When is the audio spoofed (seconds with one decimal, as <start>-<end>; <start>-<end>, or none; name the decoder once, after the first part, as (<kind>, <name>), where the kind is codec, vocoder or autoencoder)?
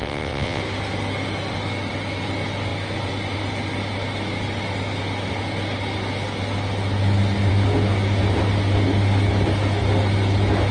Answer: 0.0-0.6 (vocoder, WaveNeXt)